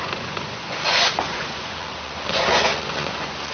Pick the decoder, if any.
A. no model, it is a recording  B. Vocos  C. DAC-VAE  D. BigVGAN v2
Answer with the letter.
B